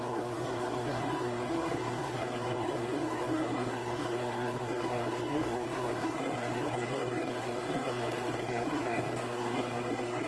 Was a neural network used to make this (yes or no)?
yes